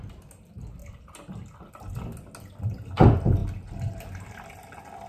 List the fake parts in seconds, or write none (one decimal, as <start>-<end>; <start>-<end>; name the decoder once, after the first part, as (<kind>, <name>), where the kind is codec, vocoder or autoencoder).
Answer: 0.8-1.7 (vocoder, BigVGAN v2)